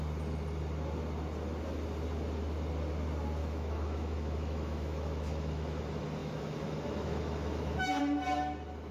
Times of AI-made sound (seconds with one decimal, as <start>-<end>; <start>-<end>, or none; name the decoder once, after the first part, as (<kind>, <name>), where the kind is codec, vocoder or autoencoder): 3.4-5.8 (autoencoder, DAC-VAE); 6.2-8.0

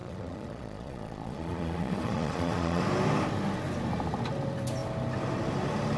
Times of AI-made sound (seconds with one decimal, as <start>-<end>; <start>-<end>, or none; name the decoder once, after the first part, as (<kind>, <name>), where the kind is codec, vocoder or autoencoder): 0.0-2.8 (vocoder, Vocos)

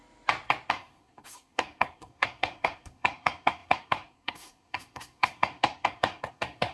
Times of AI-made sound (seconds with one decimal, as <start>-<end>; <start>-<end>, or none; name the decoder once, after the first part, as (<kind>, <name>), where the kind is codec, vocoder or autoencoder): 0.7-6.7 (codec, SNAC)

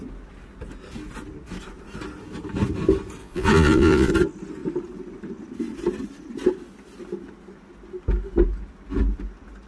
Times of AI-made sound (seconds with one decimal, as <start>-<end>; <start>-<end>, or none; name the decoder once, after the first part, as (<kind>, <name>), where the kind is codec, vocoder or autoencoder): 3.2-4.1 (vocoder, Vocos)

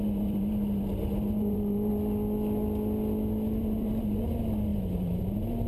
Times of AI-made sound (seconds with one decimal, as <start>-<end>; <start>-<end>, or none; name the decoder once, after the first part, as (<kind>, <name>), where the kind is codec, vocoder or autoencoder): 0.0-1.9 (vocoder, BigVGAN v2); 3.6-5.7

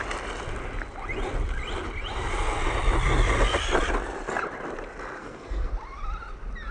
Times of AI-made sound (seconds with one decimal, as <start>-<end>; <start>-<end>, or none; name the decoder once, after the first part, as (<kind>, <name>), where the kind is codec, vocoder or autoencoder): 5.2-5.7 (codec, SNAC)

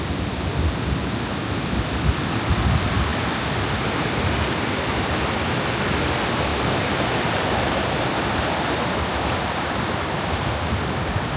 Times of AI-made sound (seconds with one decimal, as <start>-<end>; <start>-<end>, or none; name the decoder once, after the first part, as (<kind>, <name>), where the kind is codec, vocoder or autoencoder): 6.5-7.8 (vocoder, BigVGAN v2)

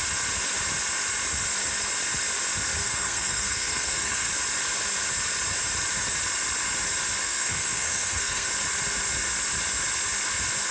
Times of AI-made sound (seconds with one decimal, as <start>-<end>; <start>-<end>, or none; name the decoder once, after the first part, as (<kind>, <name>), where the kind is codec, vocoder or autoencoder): 2.8-4.3 (codec, SNAC); 7.2-8.5